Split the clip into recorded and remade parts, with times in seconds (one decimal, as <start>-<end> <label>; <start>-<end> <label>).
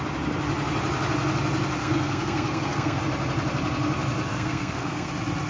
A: 0.0-1.8 recorded; 1.8-3.0 remade; 3.0-4.3 recorded; 4.3-5.1 remade; 5.1-5.5 recorded